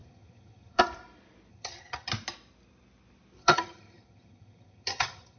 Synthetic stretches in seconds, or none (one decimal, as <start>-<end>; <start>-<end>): 0.0-0.8; 1.5-2.1; 3.4-5.4